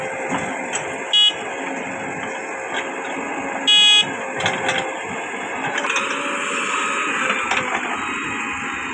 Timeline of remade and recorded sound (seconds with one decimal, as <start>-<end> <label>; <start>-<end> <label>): 0.0-8.9 recorded